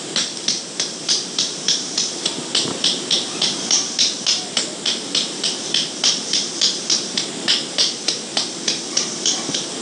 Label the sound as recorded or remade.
remade